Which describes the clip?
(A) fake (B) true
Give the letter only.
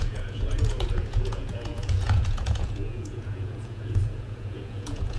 A